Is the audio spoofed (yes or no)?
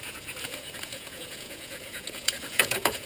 yes